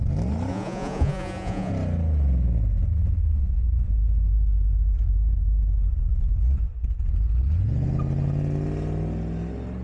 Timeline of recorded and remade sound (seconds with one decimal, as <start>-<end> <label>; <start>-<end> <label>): 0.0-0.5 recorded; 0.5-1.7 remade; 1.7-9.8 recorded